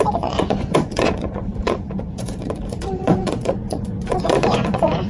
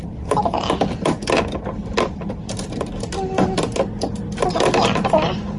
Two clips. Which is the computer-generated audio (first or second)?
first